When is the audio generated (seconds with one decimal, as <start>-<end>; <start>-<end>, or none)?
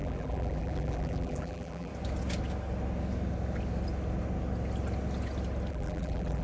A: 0.0-1.9; 5.7-6.4